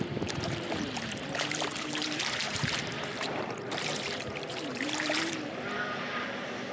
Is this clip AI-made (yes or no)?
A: yes